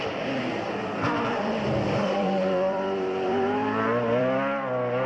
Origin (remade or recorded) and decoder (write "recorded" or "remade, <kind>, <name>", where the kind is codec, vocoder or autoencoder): remade, vocoder, BigVGAN v2